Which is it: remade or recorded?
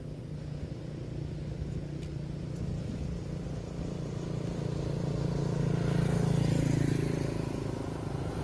recorded